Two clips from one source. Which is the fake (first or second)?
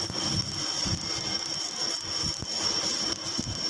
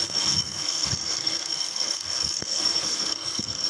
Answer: second